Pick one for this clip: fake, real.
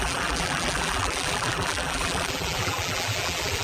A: fake